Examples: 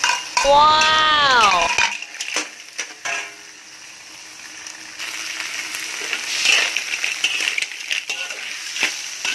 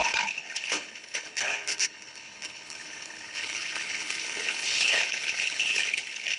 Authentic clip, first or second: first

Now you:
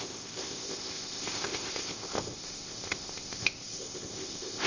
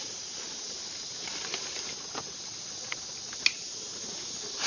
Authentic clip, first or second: second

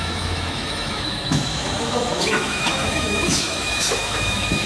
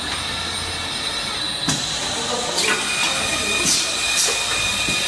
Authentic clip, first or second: second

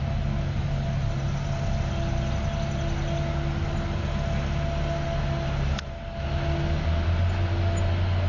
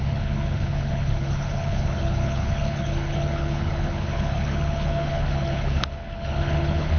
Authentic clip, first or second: first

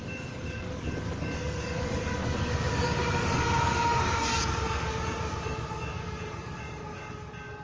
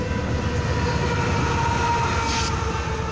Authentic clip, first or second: second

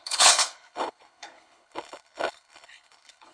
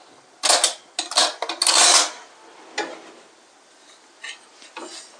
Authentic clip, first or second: second